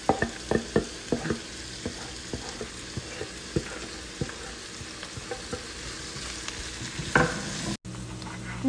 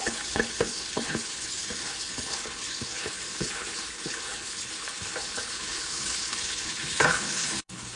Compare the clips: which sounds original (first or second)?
first